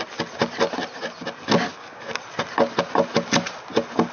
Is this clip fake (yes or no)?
no